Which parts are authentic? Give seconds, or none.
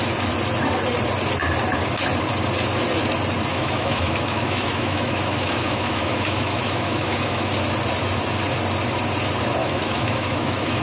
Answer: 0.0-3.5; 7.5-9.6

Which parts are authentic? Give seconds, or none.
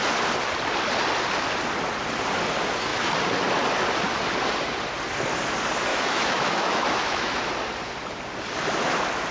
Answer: 0.0-5.9; 7.4-9.3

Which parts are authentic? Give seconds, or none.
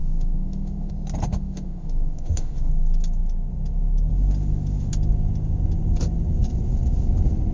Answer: 0.9-1.3; 2.7-7.5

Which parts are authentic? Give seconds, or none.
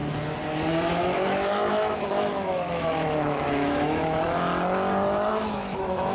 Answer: 0.0-0.9; 4.5-5.3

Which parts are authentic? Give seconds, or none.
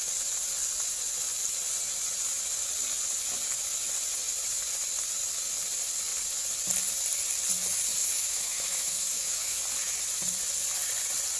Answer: 0.0-8.0; 9.6-11.4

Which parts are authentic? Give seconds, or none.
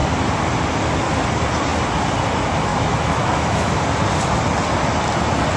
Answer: 0.0-2.7; 3.7-5.6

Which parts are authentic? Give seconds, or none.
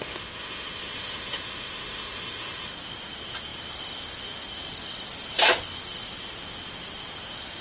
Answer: 2.7-7.6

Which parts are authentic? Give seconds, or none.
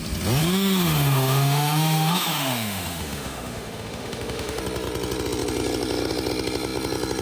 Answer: 0.0-0.4; 4.6-7.2